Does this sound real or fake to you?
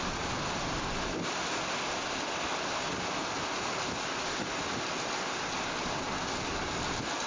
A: real